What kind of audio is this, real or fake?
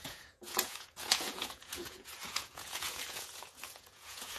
fake